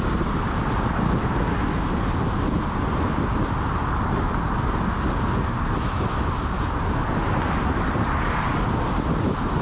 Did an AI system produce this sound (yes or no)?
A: no